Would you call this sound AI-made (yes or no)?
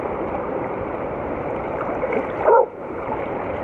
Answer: yes